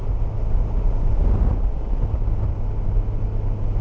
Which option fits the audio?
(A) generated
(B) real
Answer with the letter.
B